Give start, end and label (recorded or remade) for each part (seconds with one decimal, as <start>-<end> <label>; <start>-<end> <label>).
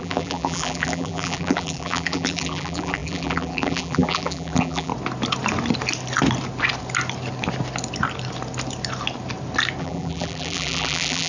0.0-4.9 remade; 4.9-9.8 recorded; 9.8-11.3 remade